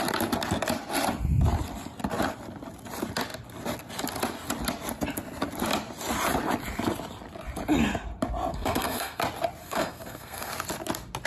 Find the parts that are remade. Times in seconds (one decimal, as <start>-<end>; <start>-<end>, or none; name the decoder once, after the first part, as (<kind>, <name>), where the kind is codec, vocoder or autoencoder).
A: 8.5-9.2 (codec, SNAC); 9.6-10.5